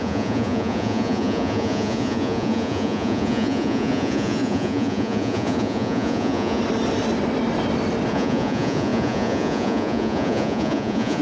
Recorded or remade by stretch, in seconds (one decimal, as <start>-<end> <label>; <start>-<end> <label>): 0.0-6.6 remade; 6.6-8.1 recorded; 8.1-11.2 remade